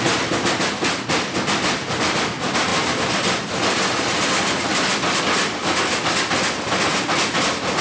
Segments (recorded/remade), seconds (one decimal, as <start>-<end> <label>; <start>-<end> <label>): 0.0-7.8 recorded